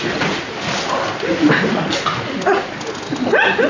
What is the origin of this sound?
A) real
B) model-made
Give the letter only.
A